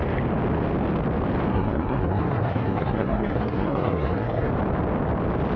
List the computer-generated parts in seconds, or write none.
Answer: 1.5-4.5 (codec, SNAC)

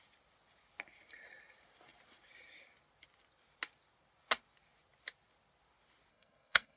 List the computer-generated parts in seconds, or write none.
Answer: 6.1-6.8 (codec, SNAC)